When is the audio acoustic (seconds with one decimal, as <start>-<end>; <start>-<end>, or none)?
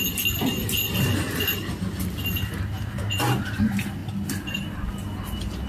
0.0-5.7